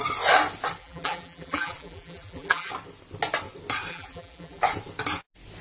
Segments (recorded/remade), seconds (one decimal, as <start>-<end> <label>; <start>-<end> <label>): 0.0-0.8 recorded; 0.8-2.7 remade; 2.7-3.9 recorded; 3.9-4.6 remade; 4.6-5.6 recorded